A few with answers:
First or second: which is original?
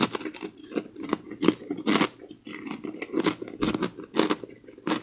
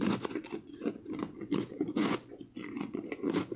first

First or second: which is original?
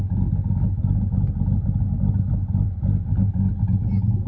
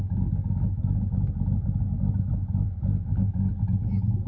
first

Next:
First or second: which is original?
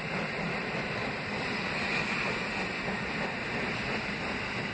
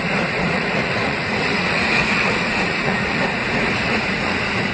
first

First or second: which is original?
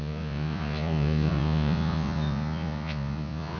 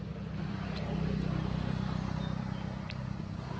second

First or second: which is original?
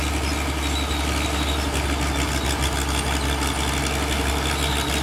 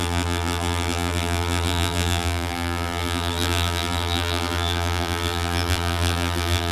first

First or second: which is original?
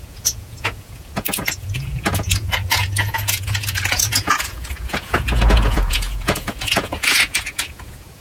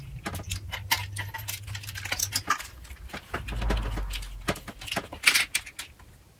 second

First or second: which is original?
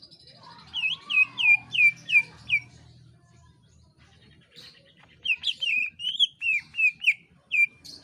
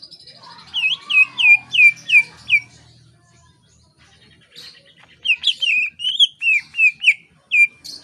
second